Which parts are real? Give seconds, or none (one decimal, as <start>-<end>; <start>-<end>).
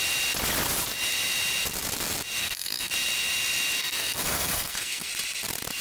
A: 0.0-2.4; 2.9-3.8; 5.1-5.8